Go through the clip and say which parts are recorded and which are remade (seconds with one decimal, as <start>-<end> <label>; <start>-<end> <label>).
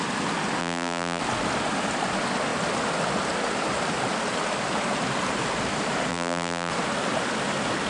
0.0-0.6 recorded; 0.6-1.2 remade; 1.2-6.1 recorded; 6.1-6.7 remade; 6.7-7.9 recorded